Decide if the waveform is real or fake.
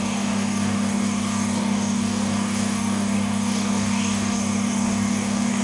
fake